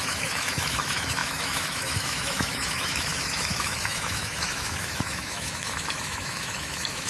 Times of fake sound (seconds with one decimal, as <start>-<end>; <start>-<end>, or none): 0.0-7.1

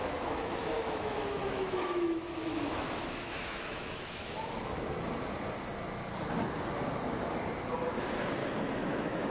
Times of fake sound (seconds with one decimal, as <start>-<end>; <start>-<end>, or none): 0.0-4.8; 8.4-9.3

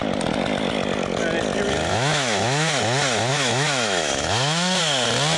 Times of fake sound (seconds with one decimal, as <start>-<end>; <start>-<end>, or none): 1.9-2.8; 3.3-4.8

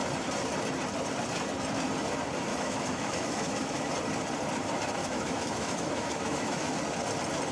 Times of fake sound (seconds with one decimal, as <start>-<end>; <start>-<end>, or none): 2.5-3.9; 5.0-6.7

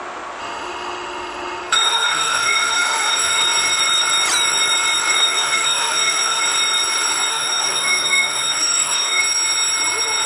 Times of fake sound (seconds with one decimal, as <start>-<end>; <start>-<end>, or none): 0.4-3.4; 5.1-6.4; 7.3-9.2

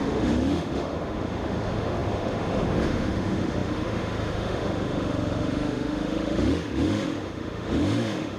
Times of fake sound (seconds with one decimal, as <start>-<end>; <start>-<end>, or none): 0.0-8.4

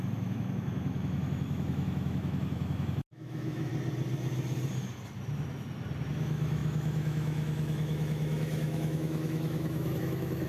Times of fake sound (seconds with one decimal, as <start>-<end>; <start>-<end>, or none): 0.0-3.7; 6.1-10.5